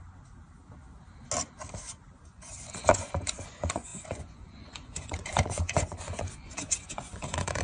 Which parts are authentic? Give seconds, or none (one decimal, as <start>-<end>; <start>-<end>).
0.0-2.3